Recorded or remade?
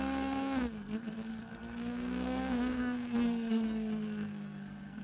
remade